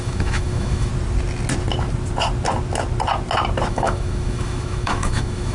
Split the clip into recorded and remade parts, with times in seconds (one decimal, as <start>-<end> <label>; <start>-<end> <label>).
0.0-0.9 remade; 0.9-3.7 recorded; 3.7-5.5 remade